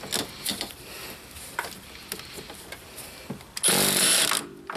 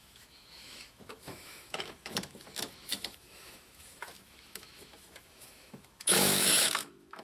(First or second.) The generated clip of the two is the second